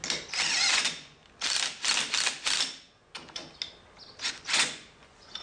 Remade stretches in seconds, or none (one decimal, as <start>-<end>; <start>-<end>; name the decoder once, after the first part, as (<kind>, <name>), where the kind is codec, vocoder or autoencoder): 0.7-1.2 (vocoder, Vocos); 2.8-3.4; 4.3-5.4